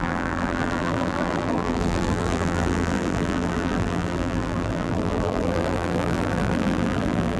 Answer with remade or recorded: remade